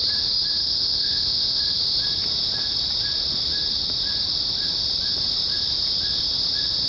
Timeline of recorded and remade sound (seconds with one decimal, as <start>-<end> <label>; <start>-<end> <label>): 0.0-0.6 recorded; 0.6-1.6 remade; 1.6-6.9 recorded